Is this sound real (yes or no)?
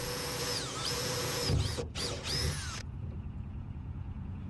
no